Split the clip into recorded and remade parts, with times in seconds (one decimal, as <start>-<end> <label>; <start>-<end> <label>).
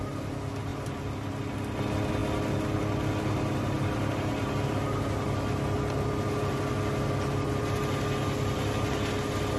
0.0-9.6 recorded